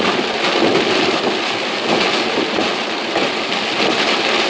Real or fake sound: real